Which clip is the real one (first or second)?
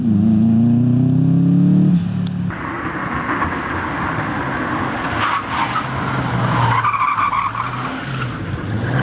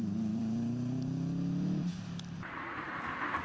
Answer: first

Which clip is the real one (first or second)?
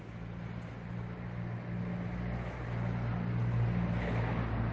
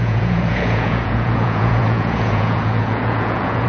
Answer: first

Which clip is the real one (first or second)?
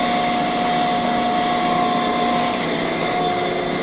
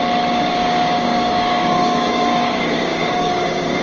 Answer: first